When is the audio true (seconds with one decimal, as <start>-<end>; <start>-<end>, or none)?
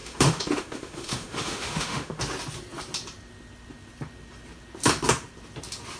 2.2-6.0